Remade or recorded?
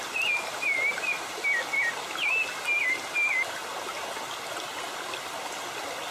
recorded